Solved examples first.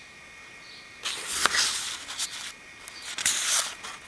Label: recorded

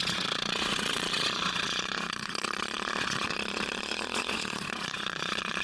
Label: remade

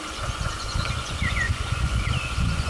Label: remade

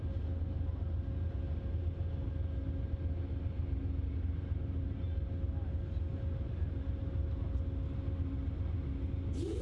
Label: recorded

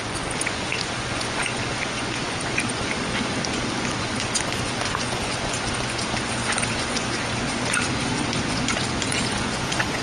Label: remade